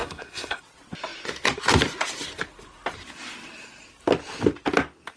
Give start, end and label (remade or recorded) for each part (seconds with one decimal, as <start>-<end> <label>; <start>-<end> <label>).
0.0-0.6 remade; 0.6-5.2 recorded